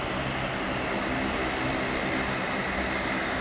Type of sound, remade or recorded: recorded